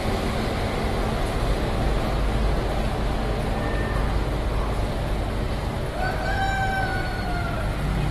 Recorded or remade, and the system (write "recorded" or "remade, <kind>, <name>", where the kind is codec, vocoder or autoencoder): recorded